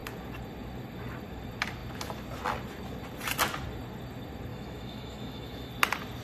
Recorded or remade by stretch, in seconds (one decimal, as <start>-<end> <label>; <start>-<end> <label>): 0.0-4.5 recorded; 4.5-5.7 remade; 5.7-6.2 recorded